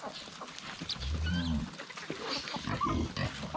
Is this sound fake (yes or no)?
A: no